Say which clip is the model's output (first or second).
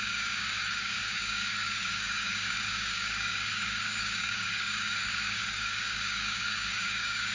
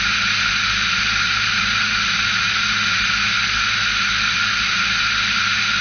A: first